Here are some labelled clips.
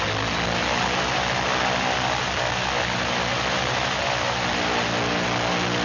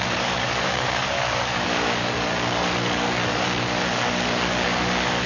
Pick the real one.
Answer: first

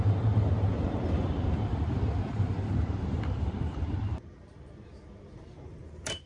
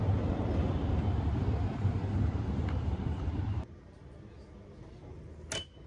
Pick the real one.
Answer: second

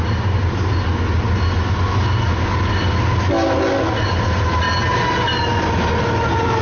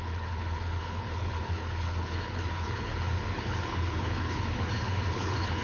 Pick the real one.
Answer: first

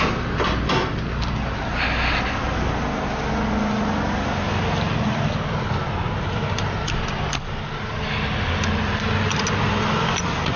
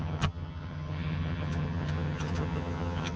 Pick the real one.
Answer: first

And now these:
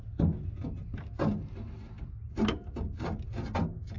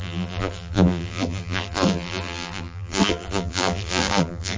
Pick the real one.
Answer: first